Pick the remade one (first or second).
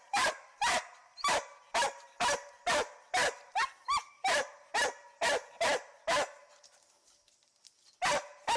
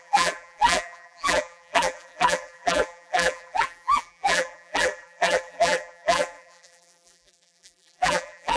second